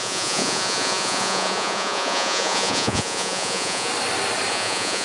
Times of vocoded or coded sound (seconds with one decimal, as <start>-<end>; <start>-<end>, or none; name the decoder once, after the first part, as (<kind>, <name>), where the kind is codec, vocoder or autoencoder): 0.0-3.9 (vocoder, Vocos); 4.5-5.0